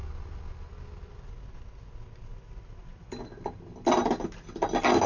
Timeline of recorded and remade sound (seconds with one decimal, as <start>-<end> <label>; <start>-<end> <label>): 0.0-5.1 recorded